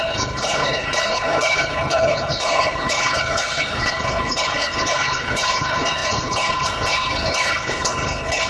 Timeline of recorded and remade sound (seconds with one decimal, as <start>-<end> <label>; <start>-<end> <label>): 0.0-8.5 remade